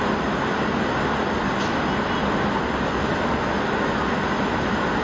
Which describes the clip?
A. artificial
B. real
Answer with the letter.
B